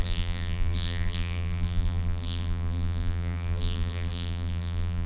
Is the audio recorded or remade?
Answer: remade